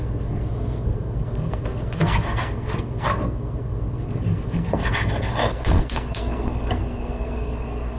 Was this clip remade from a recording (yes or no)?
yes